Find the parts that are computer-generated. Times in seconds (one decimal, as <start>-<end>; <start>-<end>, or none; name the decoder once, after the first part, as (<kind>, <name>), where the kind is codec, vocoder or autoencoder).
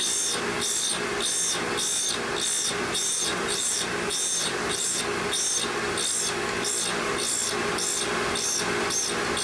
2.6-5.0 (vocoder, BigVGAN v2)